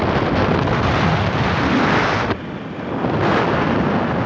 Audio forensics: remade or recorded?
recorded